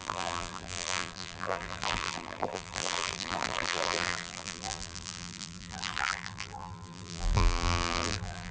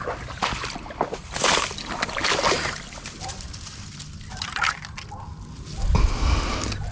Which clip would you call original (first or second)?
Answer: second